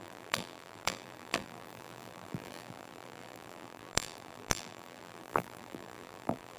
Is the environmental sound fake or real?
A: fake